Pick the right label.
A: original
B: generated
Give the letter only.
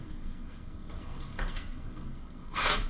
B